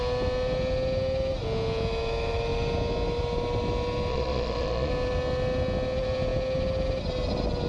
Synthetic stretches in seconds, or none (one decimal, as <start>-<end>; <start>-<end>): 4.1-4.9